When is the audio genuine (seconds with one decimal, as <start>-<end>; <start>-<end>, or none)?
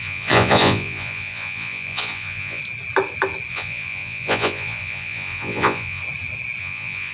2.6-3.5; 6.0-6.6